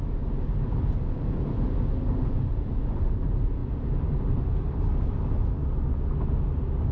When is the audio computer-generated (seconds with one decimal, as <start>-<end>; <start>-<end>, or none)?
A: none